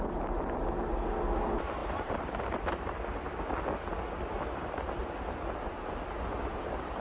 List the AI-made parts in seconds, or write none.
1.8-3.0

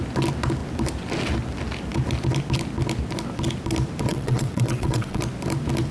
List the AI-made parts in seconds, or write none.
4.1-5.2

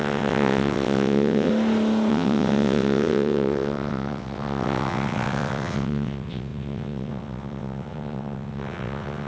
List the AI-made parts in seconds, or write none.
0.0-1.5; 2.1-9.3

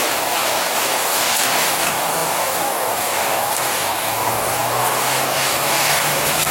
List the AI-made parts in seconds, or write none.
0.0-6.5

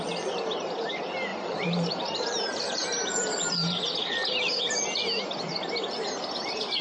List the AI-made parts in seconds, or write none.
1.3-3.8